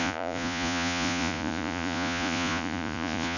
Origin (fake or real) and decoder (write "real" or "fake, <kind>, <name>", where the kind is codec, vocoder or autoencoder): fake, vocoder, Vocos